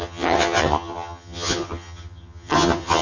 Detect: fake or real fake